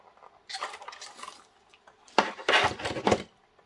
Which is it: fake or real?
real